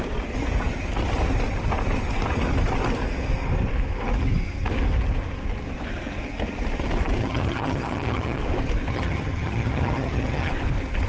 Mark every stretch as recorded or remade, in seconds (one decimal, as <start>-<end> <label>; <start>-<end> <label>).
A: 0.0-7.2 recorded; 7.2-8.4 remade; 8.4-8.9 recorded; 8.9-10.5 remade; 10.5-11.1 recorded